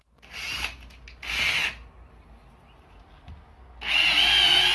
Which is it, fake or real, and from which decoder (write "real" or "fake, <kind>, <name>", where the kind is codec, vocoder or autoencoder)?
real